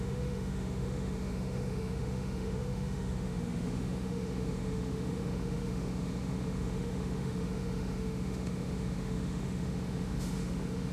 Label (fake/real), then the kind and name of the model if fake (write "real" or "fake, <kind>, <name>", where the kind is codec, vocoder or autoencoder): fake, autoencoder, DAC-VAE